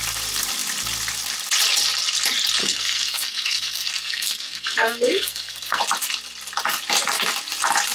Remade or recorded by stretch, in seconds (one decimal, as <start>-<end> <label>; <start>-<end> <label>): 0.0-2.6 recorded; 2.6-5.8 remade; 5.8-7.9 recorded